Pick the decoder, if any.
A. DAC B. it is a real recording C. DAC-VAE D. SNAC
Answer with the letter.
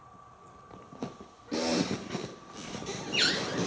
B